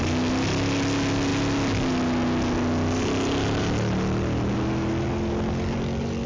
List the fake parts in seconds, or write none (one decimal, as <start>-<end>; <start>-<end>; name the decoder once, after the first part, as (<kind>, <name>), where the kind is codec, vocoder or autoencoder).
none